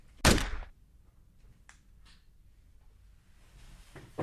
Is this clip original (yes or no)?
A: yes